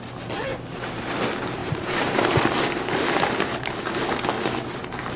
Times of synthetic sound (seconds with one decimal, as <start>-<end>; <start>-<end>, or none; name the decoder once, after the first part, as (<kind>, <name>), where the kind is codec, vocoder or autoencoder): 0.5-1.2 (vocoder, BigVGAN v2); 1.6-2.4